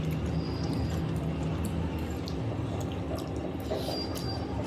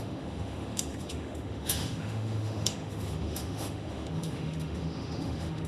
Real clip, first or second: first